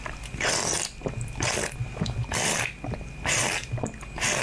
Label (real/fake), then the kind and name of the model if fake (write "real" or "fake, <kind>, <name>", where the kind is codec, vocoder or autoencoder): real